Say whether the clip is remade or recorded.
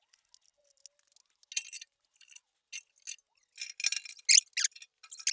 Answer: recorded